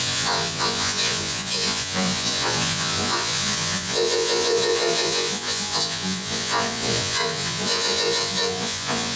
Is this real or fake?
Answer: fake